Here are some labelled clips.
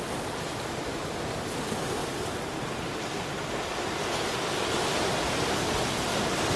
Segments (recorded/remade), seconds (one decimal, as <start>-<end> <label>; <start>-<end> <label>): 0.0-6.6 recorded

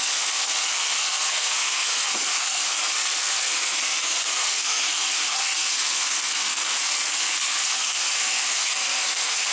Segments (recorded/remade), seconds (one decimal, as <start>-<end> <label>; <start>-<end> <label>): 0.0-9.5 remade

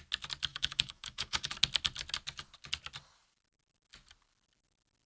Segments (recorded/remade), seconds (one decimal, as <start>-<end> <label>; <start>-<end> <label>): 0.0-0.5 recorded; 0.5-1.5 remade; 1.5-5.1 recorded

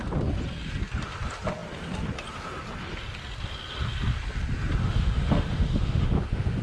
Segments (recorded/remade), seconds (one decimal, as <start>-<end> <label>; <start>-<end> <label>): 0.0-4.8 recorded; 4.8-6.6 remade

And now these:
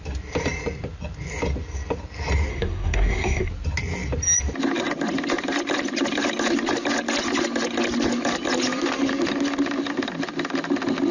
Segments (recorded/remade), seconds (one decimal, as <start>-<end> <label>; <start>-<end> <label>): 0.0-2.5 recorded; 2.5-3.5 remade; 3.5-11.1 recorded

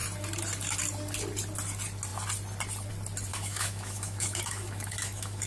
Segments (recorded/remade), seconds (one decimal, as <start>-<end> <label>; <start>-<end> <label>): 0.0-3.3 recorded; 3.3-5.5 remade

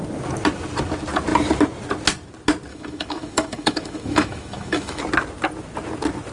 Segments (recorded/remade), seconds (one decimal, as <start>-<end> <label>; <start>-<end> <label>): 0.0-2.7 recorded; 2.7-5.0 remade; 5.0-6.3 recorded